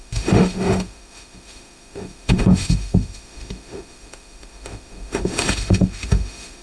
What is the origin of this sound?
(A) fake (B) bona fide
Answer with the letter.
A